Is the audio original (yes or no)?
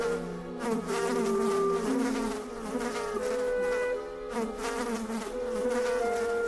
yes